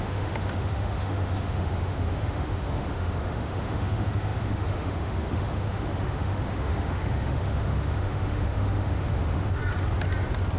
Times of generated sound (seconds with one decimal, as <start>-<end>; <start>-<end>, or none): 0.0-9.6

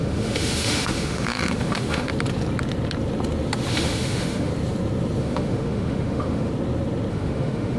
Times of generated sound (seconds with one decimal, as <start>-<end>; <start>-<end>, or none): 0.0-2.1; 3.7-4.5; 5.2-6.5; 7.1-7.8

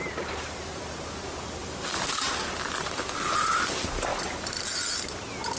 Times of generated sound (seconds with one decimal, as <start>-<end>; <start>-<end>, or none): 0.0-0.8; 1.6-2.3; 4.1-5.0

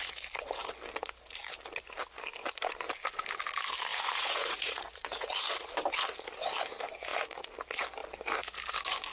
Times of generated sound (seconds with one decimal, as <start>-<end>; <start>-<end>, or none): 3.9-5.3; 7.1-7.6

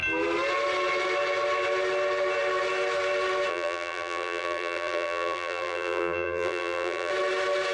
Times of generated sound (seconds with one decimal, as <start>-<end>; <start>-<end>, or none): 3.5-7.1

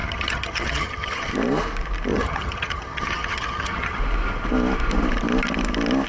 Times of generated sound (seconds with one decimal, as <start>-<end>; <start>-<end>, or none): 0.0-1.3; 2.1-4.0

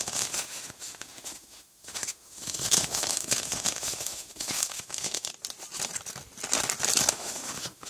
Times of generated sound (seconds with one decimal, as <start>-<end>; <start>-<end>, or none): 0.0-5.3; 7.1-7.9